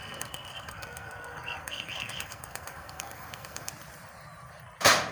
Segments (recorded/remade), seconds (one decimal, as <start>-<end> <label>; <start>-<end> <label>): 0.0-3.7 remade; 3.7-5.1 recorded